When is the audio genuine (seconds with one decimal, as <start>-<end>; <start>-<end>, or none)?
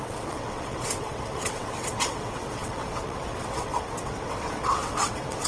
none